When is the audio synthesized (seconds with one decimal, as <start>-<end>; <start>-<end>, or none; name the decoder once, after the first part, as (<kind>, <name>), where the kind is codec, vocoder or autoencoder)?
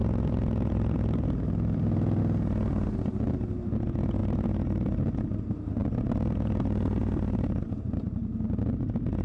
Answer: 0.0-2.2 (vocoder, BigVGAN v2); 4.2-5.0; 5.8-7.9